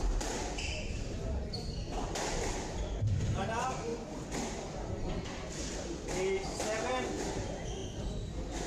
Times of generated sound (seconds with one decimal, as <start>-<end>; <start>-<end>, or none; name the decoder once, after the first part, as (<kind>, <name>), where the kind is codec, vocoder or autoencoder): none